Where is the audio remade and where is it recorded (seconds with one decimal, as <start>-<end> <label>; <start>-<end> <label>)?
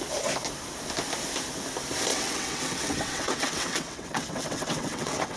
0.0-2.1 recorded; 2.1-5.4 remade